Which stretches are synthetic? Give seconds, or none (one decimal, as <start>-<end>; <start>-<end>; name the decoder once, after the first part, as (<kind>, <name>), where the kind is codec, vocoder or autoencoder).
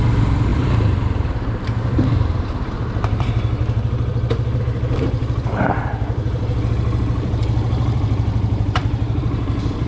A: 0.0-9.9 (vocoder, BigVGAN v2)